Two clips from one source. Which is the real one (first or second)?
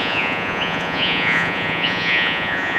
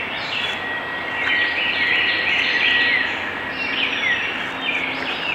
second